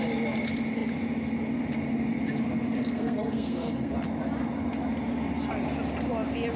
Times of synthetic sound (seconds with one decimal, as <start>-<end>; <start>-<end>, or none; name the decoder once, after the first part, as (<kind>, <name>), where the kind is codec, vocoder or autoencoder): 2.8-3.9 (codec, SNAC)